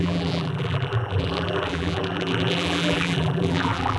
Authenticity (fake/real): fake